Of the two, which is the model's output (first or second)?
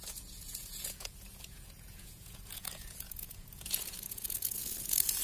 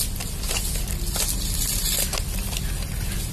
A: first